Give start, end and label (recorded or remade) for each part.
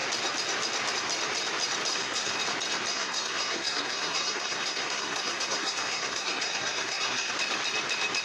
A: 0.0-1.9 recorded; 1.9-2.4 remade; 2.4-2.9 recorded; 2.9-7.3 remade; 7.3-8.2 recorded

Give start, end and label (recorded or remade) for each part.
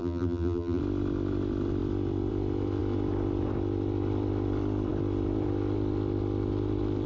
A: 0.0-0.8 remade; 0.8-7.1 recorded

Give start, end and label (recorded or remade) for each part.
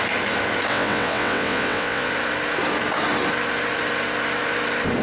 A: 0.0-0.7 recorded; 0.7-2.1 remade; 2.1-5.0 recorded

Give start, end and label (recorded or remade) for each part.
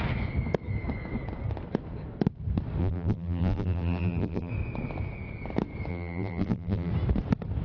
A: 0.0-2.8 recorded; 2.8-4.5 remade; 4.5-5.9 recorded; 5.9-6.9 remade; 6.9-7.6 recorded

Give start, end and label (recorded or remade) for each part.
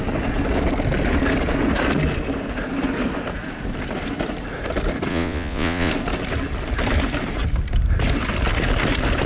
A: 0.0-5.1 recorded; 5.1-5.9 remade; 5.9-9.3 recorded